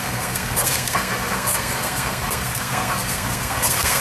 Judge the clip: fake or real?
fake